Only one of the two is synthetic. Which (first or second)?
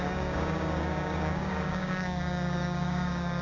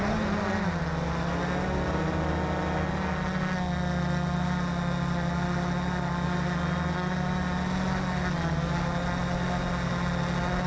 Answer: first